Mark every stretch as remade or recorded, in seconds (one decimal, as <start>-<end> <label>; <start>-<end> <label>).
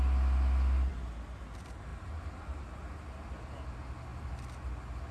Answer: 0.0-5.1 recorded